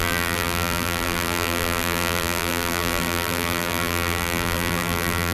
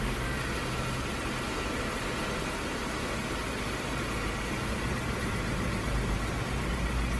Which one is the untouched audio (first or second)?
second